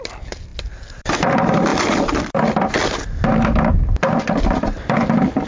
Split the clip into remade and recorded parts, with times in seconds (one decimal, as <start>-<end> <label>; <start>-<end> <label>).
0.0-5.5 recorded